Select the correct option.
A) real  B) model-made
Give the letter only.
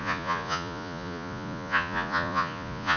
B